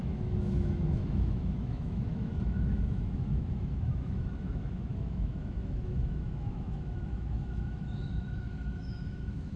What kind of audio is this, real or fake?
fake